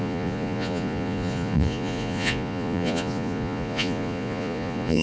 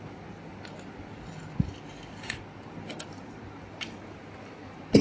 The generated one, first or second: first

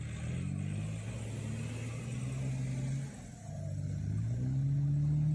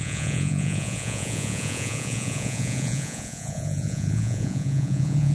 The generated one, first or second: second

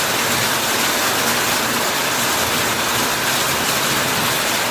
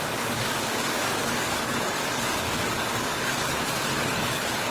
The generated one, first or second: second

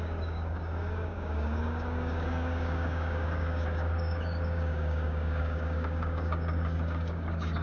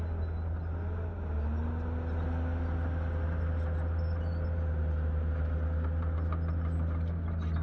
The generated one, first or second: first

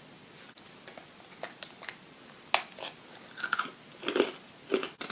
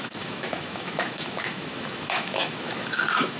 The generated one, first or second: second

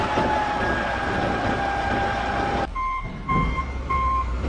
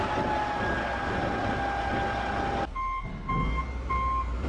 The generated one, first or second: first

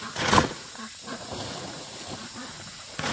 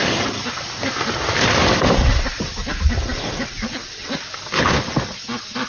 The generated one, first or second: first